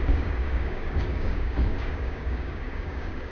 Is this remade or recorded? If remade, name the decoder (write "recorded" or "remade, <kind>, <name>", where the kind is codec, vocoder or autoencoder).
remade, codec, DAC